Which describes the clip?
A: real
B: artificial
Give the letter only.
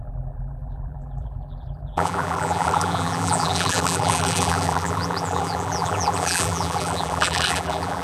B